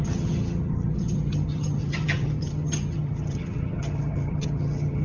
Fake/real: fake